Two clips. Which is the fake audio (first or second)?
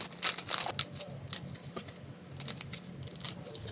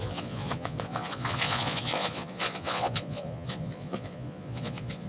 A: second